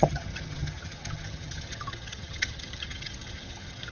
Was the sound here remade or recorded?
remade